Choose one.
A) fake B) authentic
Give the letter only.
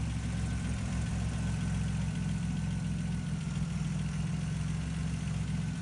B